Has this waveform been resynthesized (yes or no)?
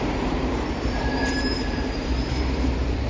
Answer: yes